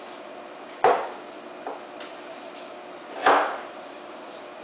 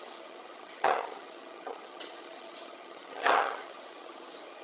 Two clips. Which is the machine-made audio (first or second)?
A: second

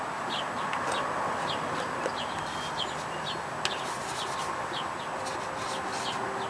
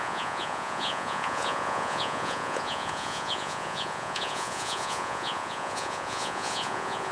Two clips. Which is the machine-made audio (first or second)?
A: second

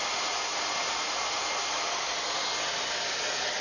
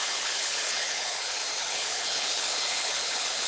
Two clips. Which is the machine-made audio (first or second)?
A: second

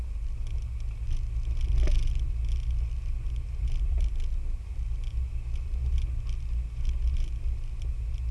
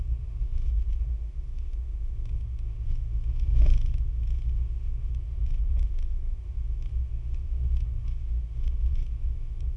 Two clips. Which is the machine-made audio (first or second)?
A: second